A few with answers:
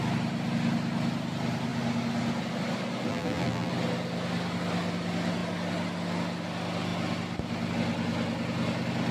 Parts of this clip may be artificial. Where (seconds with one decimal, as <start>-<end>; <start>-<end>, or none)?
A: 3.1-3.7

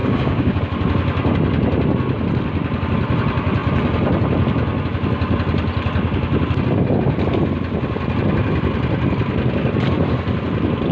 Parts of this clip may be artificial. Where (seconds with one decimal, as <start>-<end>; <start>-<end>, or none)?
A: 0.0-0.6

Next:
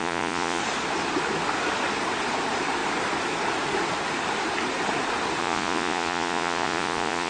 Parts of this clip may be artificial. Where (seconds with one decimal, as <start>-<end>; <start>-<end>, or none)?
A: 0.0-0.6; 5.4-7.3

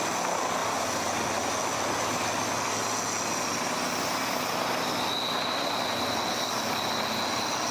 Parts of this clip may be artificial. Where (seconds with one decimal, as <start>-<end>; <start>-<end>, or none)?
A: none

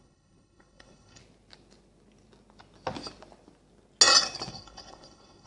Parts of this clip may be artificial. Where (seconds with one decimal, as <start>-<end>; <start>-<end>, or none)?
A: 0.0-1.2; 4.5-5.5